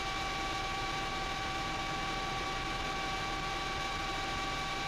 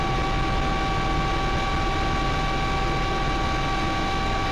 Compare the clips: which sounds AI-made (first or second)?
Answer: first